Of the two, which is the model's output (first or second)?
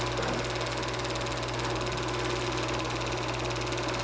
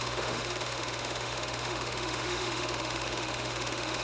second